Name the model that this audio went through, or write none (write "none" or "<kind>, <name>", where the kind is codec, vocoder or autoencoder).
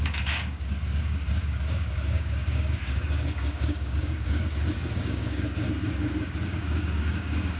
codec, DAC